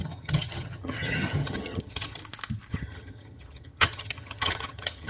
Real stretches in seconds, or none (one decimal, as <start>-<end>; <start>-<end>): 2.2-2.7